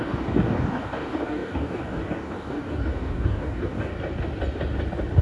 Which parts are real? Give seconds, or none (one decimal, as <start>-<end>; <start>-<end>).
3.9-5.2